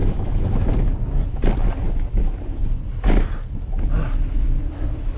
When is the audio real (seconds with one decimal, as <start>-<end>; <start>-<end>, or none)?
0.7-5.2

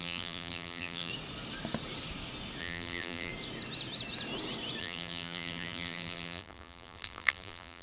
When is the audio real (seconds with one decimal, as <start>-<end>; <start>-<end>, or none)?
1.1-2.6; 3.3-4.8

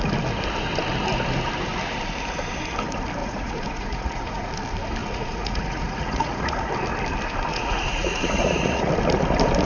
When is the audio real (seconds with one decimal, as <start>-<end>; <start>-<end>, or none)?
0.0-3.2; 4.5-5.0; 6.7-7.5; 8.9-9.6